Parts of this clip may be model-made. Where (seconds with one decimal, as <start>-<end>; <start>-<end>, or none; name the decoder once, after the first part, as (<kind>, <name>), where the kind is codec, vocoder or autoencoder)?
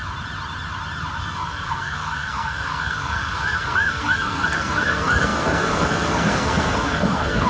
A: 1.2-7.5 (codec, SNAC)